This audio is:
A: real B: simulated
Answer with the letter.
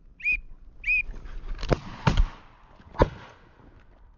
A